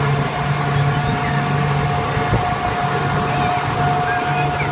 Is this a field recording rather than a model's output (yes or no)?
yes